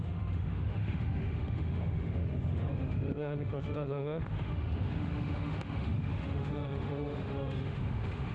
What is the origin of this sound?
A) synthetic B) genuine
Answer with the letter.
A